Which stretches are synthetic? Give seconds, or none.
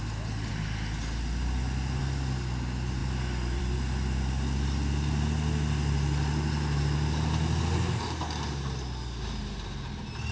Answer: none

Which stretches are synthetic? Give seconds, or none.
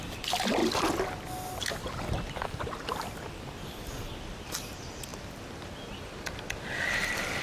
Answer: 0.0-0.6; 3.3-7.4